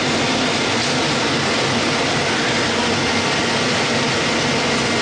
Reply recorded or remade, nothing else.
recorded